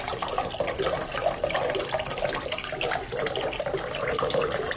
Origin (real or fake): real